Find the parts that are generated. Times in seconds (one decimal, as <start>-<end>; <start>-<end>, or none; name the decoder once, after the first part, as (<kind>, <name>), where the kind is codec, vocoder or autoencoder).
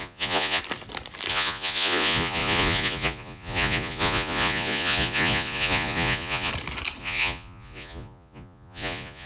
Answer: 0.0-0.6 (vocoder, Vocos); 1.3-6.5; 7.0-9.3